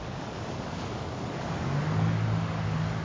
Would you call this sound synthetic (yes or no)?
yes